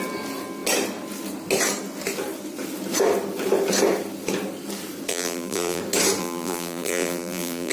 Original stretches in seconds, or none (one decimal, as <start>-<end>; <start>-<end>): 0.0-5.1; 5.8-6.2